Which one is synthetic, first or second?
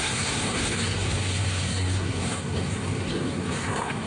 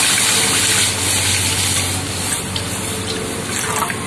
first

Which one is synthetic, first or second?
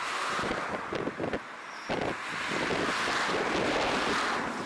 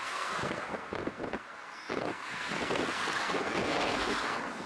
second